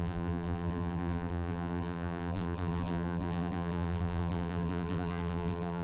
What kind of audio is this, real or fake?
fake